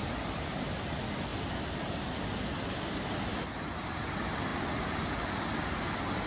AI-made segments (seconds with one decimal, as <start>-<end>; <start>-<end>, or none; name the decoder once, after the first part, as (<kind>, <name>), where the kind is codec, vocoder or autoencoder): 1.3-2.2 (vocoder, BigVGAN v2)